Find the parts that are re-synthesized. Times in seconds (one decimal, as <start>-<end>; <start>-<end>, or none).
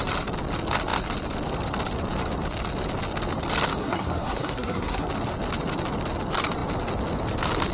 3.8-5.1